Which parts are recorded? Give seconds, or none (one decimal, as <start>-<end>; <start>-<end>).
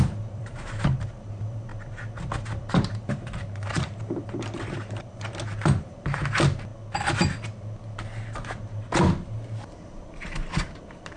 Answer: 1.7-2.7; 6.7-9.7